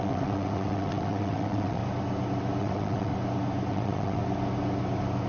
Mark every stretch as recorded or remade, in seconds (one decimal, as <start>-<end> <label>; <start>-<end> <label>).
0.0-1.8 remade; 1.8-2.6 recorded; 2.6-3.1 remade; 3.1-3.7 recorded; 3.7-4.2 remade; 4.2-5.3 recorded